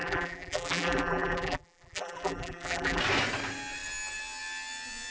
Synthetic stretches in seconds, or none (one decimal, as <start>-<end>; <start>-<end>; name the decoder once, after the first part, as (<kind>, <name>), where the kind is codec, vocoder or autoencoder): 0.0-3.0 (vocoder, BigVGAN v2)